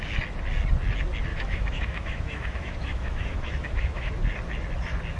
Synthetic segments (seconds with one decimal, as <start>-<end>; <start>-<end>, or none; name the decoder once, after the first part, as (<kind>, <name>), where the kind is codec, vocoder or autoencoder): 1.3-4.1 (autoencoder, DAC-VAE)